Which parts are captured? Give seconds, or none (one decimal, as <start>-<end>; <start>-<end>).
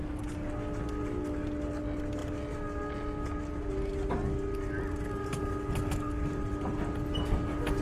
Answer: 0.0-7.8